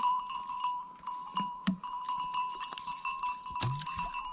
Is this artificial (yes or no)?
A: yes